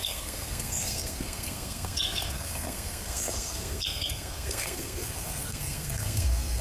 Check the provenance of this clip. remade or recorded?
remade